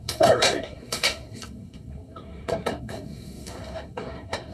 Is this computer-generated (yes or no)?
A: yes